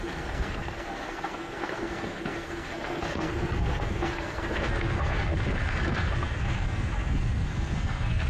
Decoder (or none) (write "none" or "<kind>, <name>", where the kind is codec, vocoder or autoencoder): codec, SNAC